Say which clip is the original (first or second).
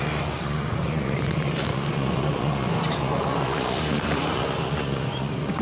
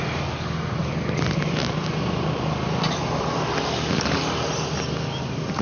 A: second